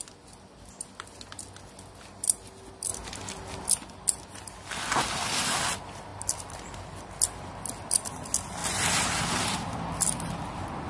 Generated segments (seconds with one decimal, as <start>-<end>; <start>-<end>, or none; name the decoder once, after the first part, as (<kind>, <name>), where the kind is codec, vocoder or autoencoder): none

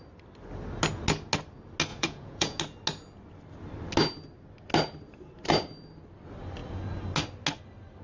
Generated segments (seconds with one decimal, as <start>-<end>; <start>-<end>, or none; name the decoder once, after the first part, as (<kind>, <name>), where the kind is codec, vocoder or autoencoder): 1.9-2.6 (vocoder, Vocos)

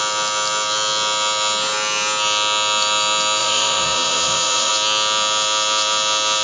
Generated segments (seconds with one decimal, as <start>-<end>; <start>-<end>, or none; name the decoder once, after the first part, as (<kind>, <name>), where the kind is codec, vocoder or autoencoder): 3.4-4.7 (vocoder, Vocos)

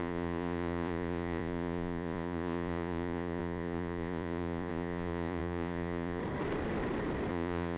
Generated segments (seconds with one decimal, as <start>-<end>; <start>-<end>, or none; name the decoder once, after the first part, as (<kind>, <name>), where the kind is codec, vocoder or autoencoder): 0.0-6.2 (vocoder, Vocos); 7.3-7.8

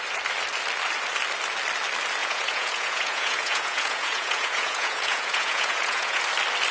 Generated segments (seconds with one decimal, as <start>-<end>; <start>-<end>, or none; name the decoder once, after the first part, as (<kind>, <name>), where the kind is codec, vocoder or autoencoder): 2.2-6.2 (vocoder, Vocos)

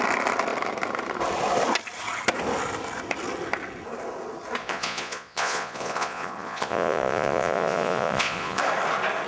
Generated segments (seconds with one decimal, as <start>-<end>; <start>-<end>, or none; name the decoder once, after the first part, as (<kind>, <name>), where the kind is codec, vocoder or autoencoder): 4.6-8.6 (vocoder, Vocos)

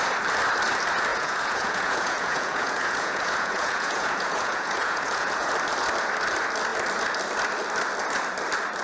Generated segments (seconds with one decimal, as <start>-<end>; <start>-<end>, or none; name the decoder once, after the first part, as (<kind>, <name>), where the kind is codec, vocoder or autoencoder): 1.1-5.5 (vocoder, Vocos)

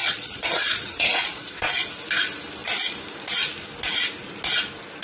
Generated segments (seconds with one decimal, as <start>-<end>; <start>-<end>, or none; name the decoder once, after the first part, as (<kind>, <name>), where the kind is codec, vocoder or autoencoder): 0.0-1.9 (vocoder, Vocos)